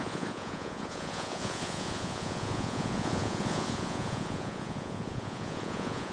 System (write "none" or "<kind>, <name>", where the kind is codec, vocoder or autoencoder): vocoder, Vocos